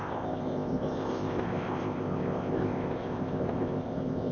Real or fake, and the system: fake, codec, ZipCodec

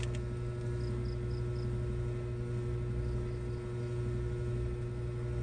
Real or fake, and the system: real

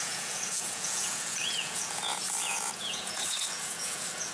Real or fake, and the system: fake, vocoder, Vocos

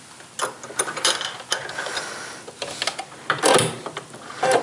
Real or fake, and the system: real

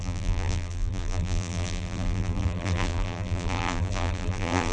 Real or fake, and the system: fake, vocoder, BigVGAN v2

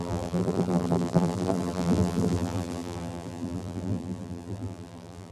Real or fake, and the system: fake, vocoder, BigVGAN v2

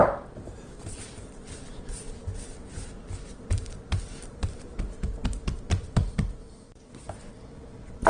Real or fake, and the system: fake, vocoder, BigVGAN v2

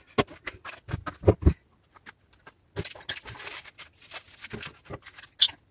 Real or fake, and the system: real